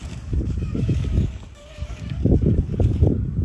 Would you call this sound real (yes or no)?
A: no